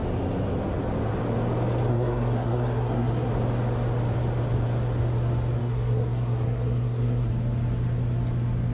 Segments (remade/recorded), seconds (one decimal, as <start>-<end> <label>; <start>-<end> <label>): 0.0-1.9 recorded; 1.9-3.3 remade; 3.3-5.6 recorded; 5.6-7.3 remade; 7.3-8.7 recorded